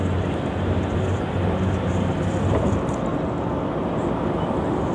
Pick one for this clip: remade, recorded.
recorded